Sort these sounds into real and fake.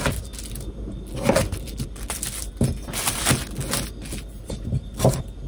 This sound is real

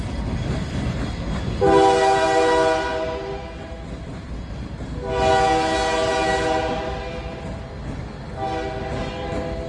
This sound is real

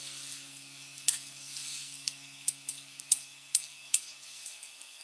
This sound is fake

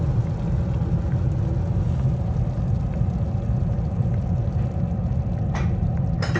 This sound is real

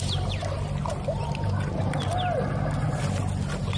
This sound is real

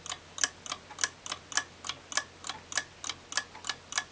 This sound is real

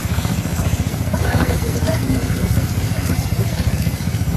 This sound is fake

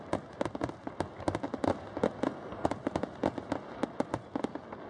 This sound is real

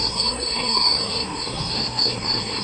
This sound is fake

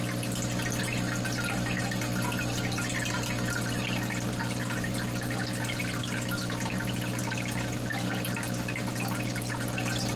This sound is real